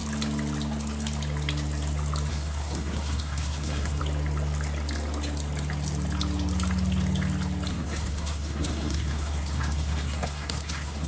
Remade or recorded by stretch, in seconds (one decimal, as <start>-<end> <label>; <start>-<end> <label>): 0.0-2.3 recorded; 2.3-4.0 remade; 4.0-7.7 recorded; 7.7-11.1 remade